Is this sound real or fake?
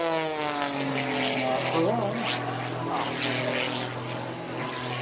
real